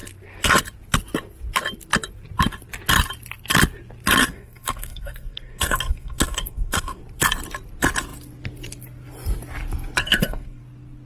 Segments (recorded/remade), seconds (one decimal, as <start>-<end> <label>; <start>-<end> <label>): 0.0-4.2 recorded; 4.2-7.0 remade; 7.0-10.0 recorded; 10.0-10.6 remade; 10.6-11.1 recorded